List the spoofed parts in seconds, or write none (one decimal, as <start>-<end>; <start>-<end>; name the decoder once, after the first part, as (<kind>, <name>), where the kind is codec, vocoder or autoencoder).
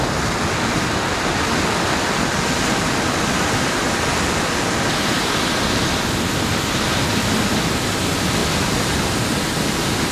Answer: none